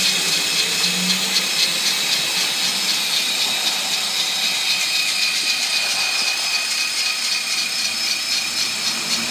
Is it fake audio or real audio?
real